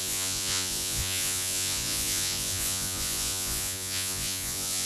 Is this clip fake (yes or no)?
yes